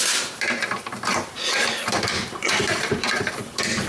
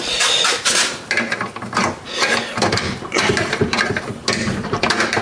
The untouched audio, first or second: second